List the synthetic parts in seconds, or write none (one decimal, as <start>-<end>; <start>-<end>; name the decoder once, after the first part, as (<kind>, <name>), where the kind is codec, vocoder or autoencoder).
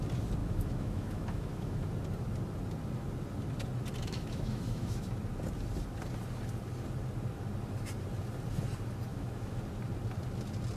0.4-1.9 (autoencoder, DAC-VAE); 4.0-5.1; 9.1-9.6